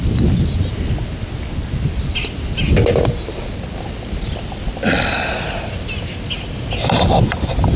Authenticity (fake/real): real